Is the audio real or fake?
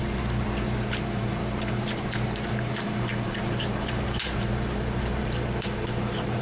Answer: fake